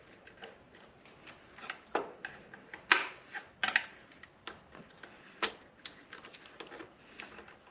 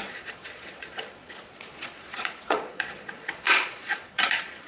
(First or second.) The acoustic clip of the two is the first